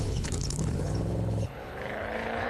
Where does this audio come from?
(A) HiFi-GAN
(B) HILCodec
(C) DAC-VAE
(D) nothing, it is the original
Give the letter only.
B